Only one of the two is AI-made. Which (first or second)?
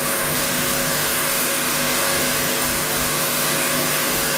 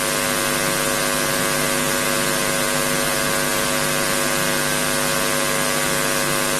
first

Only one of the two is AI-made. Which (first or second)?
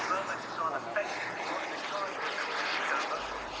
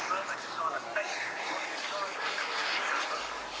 second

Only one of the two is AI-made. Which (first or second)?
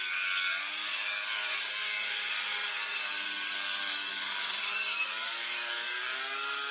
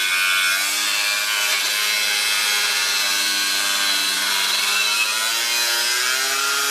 first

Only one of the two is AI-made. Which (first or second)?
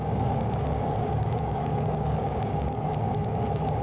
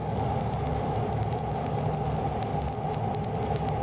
first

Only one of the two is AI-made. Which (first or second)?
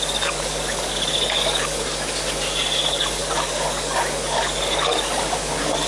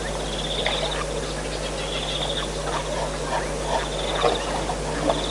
first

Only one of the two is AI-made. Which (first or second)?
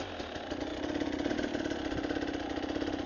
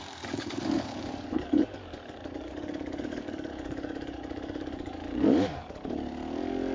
second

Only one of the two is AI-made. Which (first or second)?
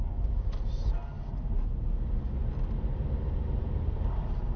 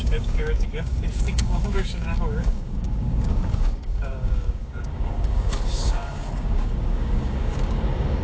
second